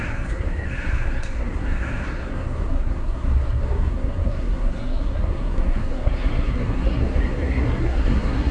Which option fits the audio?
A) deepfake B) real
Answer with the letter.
A